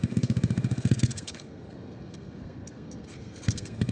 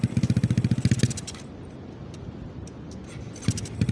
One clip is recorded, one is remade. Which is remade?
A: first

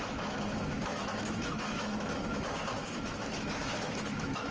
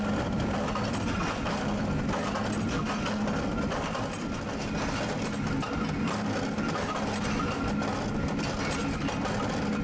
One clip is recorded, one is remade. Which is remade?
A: first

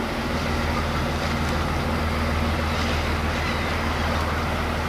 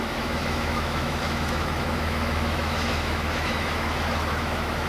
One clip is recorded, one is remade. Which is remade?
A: second